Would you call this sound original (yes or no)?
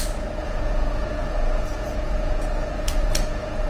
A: no